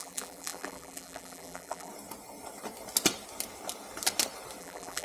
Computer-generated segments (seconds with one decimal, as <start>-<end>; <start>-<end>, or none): 0.0-1.9; 4.6-5.0